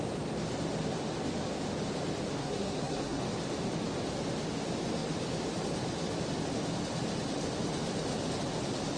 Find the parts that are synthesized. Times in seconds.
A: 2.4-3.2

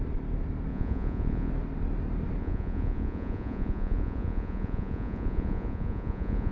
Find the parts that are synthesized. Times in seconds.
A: 0.7-1.5; 2.4-6.5

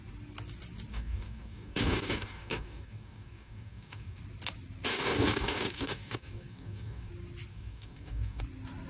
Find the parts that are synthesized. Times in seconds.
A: 0.9-4.2; 4.9-7.1; 7.5-8.4

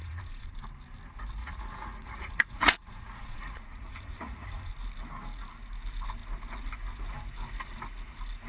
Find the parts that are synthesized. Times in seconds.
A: 0.0-0.5; 1.4-4.7

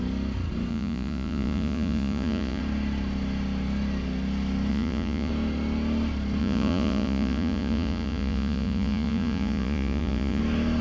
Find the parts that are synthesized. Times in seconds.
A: 0.7-2.6; 4.7-5.3; 6.4-10.4

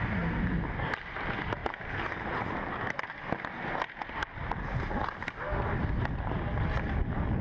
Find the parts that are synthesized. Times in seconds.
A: none

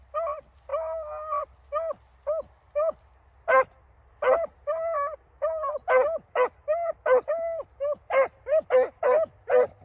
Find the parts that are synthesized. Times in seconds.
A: none

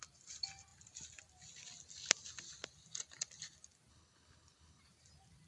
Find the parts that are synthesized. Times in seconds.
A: 3.9-4.8